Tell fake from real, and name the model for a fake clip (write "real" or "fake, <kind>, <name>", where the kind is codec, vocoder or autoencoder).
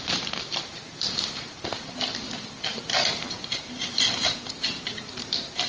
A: fake, vocoder, BigVGAN v2